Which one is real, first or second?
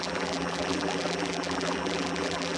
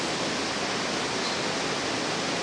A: second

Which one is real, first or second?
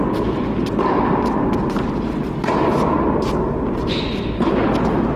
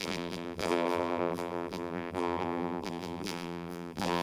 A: first